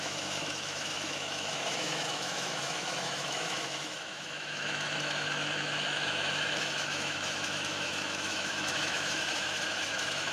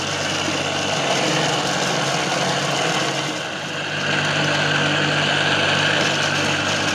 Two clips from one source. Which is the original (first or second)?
second